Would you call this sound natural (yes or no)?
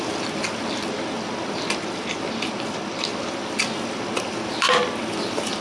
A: yes